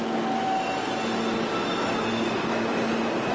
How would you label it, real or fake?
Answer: real